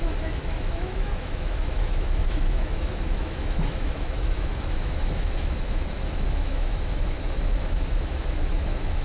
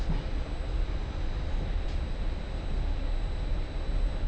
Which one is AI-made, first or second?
first